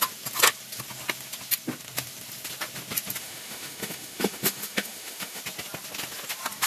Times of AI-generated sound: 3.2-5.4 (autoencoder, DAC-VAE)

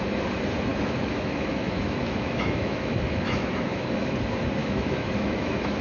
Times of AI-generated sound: 0.7-4.1 (autoencoder, DAC-VAE); 4.6-5.8

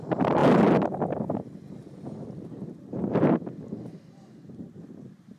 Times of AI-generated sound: none